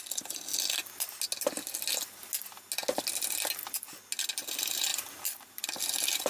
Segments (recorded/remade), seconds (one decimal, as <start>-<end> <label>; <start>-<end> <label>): 0.0-0.5 remade; 0.5-4.3 recorded; 4.3-6.3 remade